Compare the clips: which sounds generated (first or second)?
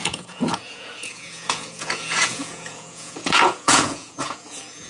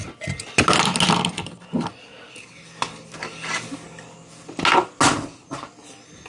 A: first